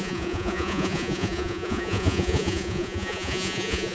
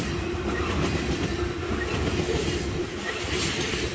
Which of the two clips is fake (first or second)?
first